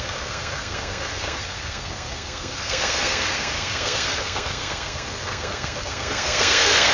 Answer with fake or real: fake